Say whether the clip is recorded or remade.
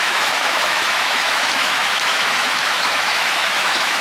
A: remade